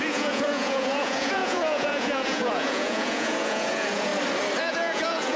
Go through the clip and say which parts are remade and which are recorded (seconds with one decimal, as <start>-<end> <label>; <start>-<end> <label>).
0.0-4.1 remade; 4.1-4.6 recorded; 4.6-5.4 remade